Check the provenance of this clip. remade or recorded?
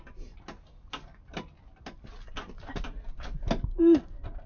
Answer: recorded